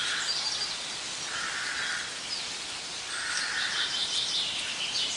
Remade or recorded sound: recorded